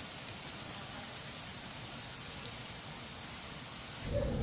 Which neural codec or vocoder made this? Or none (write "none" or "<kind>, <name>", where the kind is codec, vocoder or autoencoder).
none